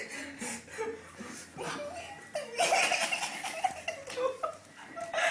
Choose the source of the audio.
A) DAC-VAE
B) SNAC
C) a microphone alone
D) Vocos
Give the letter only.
C